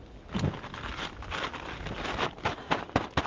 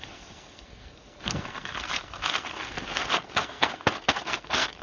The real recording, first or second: first